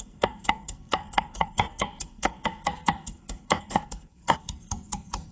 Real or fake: fake